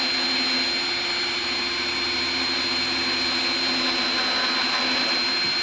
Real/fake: real